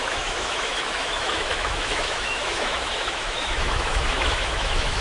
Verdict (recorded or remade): remade